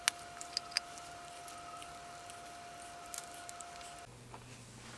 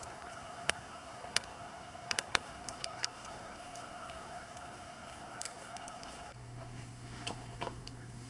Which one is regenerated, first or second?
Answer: second